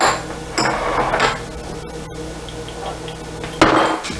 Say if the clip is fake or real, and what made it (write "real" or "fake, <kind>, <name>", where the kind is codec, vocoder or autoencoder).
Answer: real